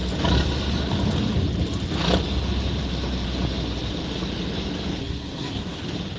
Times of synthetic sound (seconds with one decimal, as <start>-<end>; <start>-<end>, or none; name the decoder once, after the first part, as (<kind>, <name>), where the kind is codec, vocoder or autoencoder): 5.0-5.8 (codec, SNAC)